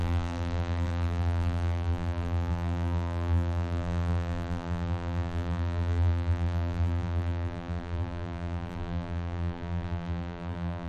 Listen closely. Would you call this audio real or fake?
fake